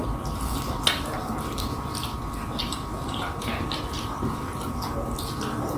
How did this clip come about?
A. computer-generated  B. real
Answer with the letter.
B